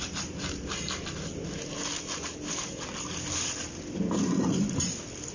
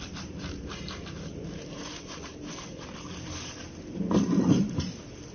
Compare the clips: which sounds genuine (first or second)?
first